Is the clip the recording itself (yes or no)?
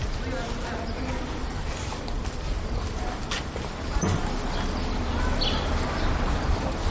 yes